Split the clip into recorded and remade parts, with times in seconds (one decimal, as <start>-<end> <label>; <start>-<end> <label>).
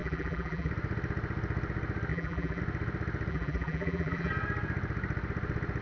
0.0-0.7 remade; 0.7-2.1 recorded; 2.1-2.6 remade; 2.6-3.3 recorded; 3.3-4.3 remade; 4.3-5.8 recorded